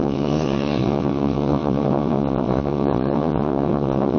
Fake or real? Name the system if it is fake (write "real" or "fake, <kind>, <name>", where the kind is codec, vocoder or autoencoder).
fake, vocoder, WaveNeXt